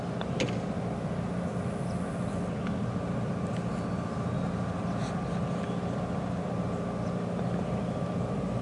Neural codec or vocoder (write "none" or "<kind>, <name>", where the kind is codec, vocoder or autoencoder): none